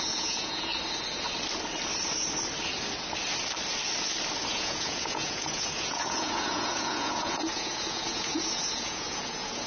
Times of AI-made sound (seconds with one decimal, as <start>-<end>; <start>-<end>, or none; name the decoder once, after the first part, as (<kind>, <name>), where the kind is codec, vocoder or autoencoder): 0.0-0.7 (vocoder, Vocos); 4.5-9.7